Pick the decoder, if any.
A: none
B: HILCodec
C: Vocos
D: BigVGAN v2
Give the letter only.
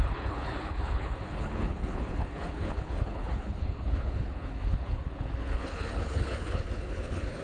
B